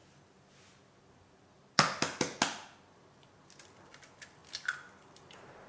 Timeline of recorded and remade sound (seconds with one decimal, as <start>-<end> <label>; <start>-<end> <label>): 0.0-5.7 recorded